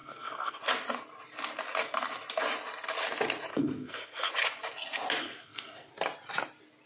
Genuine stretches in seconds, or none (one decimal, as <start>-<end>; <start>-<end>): 0.6-3.5; 4.3-5.2; 5.9-6.9